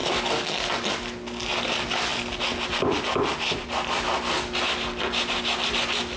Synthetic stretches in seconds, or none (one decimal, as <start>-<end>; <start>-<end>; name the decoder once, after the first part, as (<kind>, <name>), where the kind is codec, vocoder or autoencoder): none